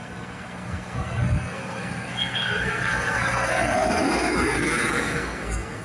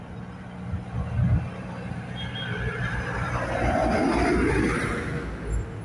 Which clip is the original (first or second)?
second